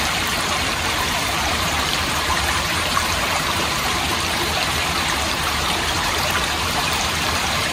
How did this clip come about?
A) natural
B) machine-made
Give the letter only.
B